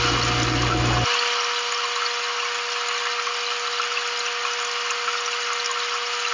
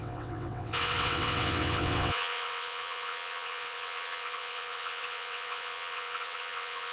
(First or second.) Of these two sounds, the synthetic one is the second